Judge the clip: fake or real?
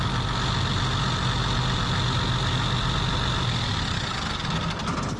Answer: real